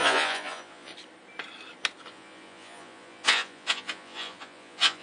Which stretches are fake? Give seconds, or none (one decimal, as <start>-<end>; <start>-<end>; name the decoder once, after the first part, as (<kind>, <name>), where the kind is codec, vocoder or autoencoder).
0.0-0.9 (vocoder, Vocos); 2.1-5.0